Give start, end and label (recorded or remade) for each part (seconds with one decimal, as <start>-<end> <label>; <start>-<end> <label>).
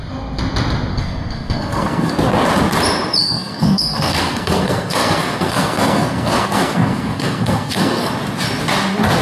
0.0-0.9 recorded; 0.9-2.1 remade; 2.1-3.2 recorded; 3.2-8.1 remade; 8.1-9.2 recorded